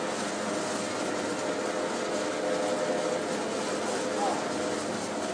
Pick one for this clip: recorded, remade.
recorded